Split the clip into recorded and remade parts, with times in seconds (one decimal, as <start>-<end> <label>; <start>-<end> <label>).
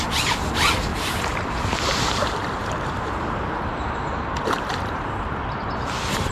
0.0-0.9 recorded; 0.9-1.6 remade; 1.6-2.6 recorded; 2.6-6.3 remade